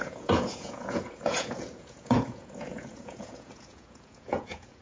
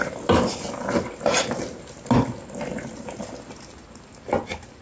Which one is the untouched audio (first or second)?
second